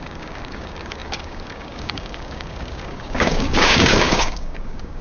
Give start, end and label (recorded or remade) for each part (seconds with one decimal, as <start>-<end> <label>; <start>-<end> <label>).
0.0-5.0 remade